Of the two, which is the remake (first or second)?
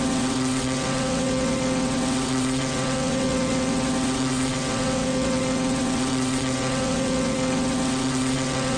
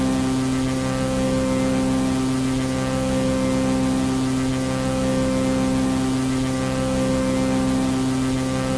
first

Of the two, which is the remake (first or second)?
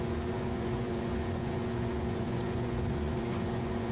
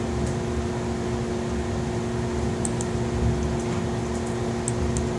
first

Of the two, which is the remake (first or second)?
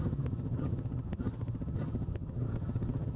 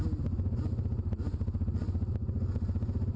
first